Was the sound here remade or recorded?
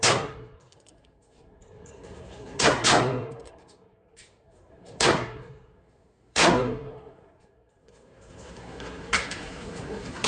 remade